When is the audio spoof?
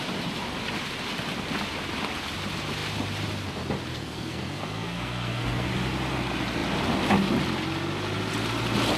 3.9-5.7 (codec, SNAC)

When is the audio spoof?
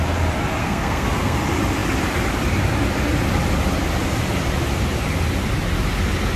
0.6-1.4 (codec, SNAC)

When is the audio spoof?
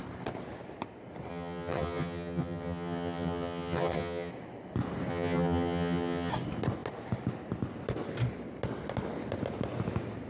1.3-4.3 (vocoder, HiFi-GAN); 5.1-6.3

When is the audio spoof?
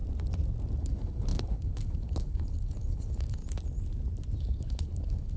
0.8-3.4 (codec, HILCodec); 4.4-5.4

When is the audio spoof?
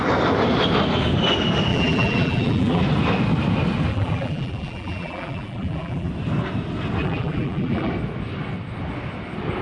1.7-2.8 (vocoder, BigVGAN v2); 3.9-6.1; 7.0-7.9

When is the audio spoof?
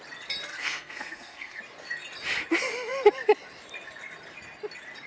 0.5-1.6 (codec, SNAC)